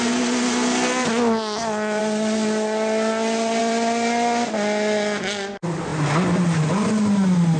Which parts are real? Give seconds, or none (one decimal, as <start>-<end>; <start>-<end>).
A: 0.0-7.6